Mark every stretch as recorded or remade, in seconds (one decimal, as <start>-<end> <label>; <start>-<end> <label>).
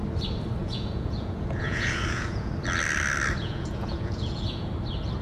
0.0-0.6 recorded; 0.6-2.5 remade; 2.5-3.4 recorded; 3.4-4.7 remade; 4.7-5.2 recorded